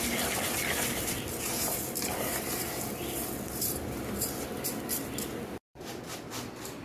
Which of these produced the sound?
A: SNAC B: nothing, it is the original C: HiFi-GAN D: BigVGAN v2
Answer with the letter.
D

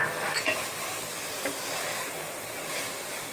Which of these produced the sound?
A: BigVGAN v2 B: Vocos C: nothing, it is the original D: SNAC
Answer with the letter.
C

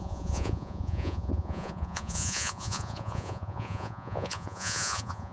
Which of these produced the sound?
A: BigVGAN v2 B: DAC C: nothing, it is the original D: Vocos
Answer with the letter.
D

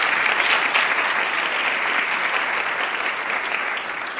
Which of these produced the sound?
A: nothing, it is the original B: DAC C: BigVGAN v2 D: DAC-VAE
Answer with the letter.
A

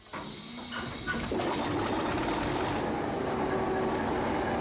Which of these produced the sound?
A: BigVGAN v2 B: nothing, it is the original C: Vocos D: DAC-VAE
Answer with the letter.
B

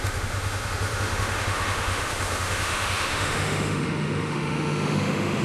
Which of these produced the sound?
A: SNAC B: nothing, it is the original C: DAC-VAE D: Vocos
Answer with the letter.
C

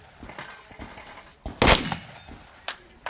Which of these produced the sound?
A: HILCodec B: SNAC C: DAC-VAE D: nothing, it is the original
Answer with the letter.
D